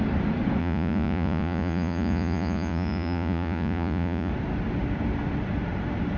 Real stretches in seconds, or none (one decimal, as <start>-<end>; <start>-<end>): 0.0-0.6; 4.3-6.2